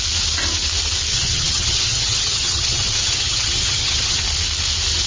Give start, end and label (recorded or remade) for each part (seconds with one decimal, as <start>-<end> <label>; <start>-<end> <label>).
0.0-1.1 recorded; 1.1-4.2 remade; 4.2-5.1 recorded